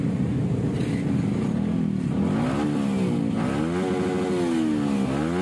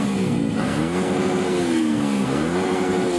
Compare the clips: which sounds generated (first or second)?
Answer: second